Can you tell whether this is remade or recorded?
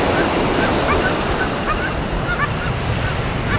recorded